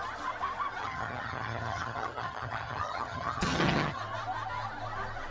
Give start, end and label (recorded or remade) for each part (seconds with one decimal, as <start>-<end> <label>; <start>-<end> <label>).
0.0-0.8 recorded; 0.8-4.0 remade; 4.0-5.3 recorded